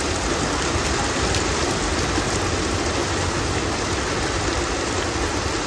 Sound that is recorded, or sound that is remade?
recorded